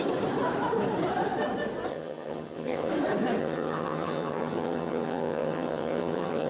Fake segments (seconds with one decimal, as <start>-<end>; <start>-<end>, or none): 1.9-2.9; 3.4-6.5